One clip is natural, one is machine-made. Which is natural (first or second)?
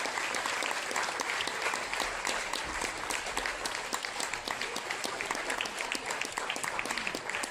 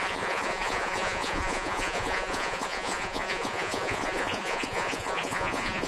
first